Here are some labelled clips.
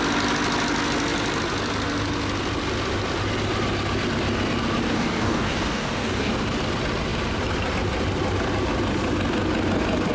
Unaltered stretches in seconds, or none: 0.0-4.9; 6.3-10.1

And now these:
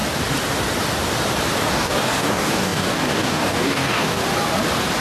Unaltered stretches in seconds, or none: 0.0-1.7; 4.2-5.0

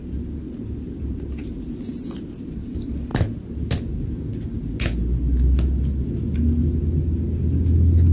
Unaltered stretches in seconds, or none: 0.0-8.1

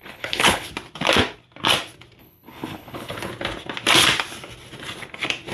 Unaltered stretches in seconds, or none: 0.7-2.2; 3.3-5.5